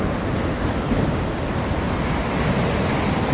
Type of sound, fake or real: real